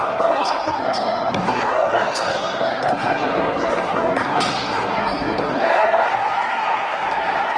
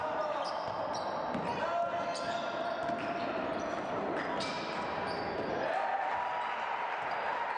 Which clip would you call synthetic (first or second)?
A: first